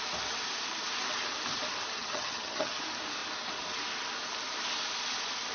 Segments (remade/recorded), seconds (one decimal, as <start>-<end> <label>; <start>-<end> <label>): 0.0-2.0 recorded; 2.0-2.8 remade; 2.8-5.5 recorded